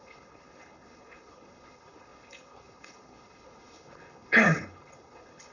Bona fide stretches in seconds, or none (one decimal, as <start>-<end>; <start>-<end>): none

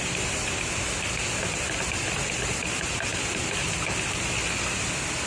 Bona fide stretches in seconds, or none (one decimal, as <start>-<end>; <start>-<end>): 0.0-5.3

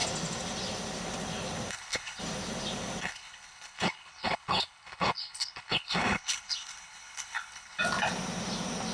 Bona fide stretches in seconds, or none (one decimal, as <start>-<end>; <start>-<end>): 0.0-1.7; 2.2-3.0; 7.8-8.9

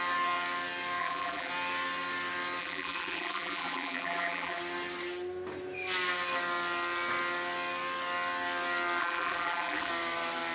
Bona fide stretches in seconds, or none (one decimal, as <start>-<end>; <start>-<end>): 0.0-1.0; 1.5-2.6; 4.6-9.0; 9.9-10.5

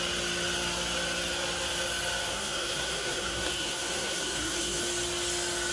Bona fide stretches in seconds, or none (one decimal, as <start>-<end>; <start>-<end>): 0.0-2.3; 4.8-5.7

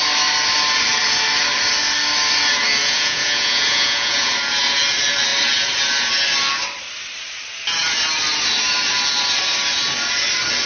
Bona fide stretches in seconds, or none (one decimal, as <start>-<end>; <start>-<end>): 0.0-2.8; 4.3-10.7